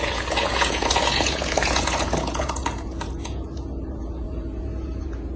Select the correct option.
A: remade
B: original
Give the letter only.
A